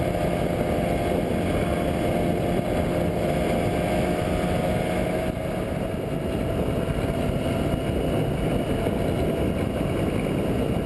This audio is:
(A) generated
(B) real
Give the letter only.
B